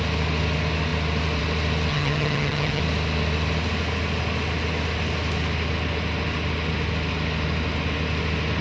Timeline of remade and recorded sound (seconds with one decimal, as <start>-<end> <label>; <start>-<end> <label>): 0.0-1.9 recorded; 1.9-2.8 remade; 2.8-8.6 recorded

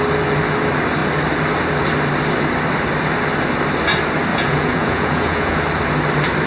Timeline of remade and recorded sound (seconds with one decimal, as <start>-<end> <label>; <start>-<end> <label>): 0.0-4.3 recorded; 4.3-5.6 remade; 5.6-6.5 recorded

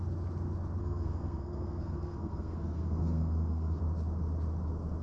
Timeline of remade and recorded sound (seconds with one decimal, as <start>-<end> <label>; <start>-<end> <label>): 0.0-0.8 recorded; 0.8-3.8 remade; 3.8-5.0 recorded

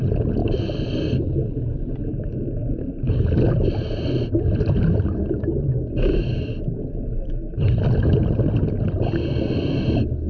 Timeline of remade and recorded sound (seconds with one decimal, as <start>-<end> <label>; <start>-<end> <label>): 0.0-10.3 recorded

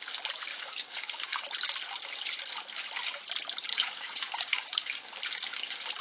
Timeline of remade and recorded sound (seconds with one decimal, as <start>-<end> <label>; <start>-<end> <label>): 0.0-0.5 recorded; 0.5-1.4 remade; 1.4-3.7 recorded; 3.7-5.2 remade; 5.2-6.0 recorded

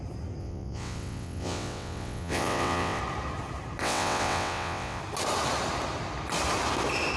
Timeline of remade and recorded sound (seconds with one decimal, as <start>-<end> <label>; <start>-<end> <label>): 0.0-0.4 recorded; 0.4-3.0 remade; 3.0-3.8 recorded; 3.8-5.0 remade; 5.0-7.2 recorded

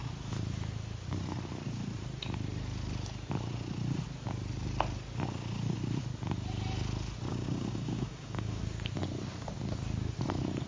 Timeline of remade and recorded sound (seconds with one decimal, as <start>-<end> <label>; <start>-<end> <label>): 0.0-7.3 recorded; 7.3-8.6 remade; 8.6-10.7 recorded